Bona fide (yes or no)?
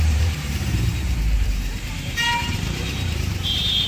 no